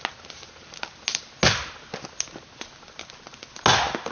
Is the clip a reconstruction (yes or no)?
no